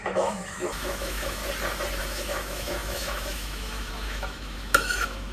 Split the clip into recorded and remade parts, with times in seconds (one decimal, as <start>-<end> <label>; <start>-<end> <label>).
0.0-1.4 remade; 1.4-2.0 recorded; 2.0-5.3 remade